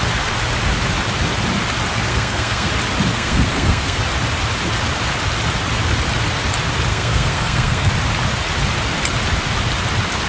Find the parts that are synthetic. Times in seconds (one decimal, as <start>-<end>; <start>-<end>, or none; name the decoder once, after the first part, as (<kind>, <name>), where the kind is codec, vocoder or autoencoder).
2.1-2.7 (codec, SNAC); 3.1-4.0; 6.9-7.9